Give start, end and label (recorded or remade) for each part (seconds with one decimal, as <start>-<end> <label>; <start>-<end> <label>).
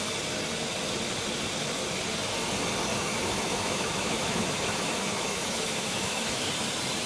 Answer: 0.0-2.9 recorded; 2.9-6.5 remade; 6.5-7.1 recorded